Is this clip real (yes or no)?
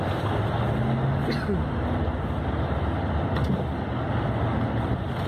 yes